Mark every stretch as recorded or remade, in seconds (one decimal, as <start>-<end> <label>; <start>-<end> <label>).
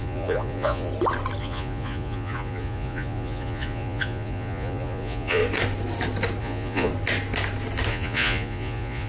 0.0-0.9 remade; 0.9-1.4 recorded; 1.4-5.4 remade; 5.4-6.4 recorded; 6.4-6.9 remade; 6.9-7.9 recorded; 7.9-9.1 remade